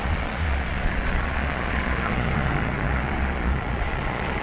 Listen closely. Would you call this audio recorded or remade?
remade